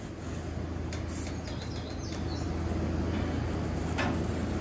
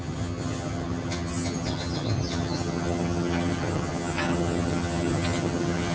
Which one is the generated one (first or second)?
second